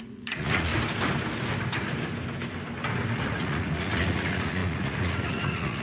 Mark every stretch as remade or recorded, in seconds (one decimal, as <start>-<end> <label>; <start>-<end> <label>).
0.0-0.7 remade; 0.7-3.1 recorded; 3.1-5.8 remade